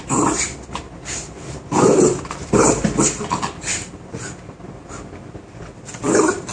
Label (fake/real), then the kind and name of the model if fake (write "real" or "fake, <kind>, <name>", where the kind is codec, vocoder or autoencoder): real